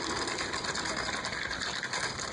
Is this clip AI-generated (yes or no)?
no